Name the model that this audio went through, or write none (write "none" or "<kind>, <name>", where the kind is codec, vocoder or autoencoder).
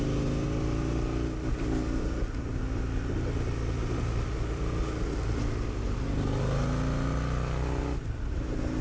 none